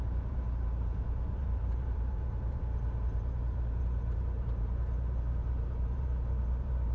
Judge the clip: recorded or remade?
remade